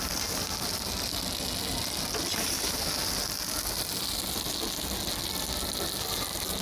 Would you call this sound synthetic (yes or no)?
no